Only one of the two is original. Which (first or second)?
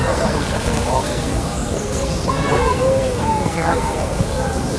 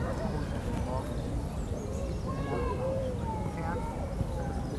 second